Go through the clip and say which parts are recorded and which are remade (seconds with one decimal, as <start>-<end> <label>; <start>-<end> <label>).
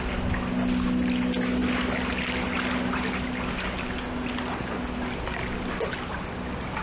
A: 0.0-6.8 recorded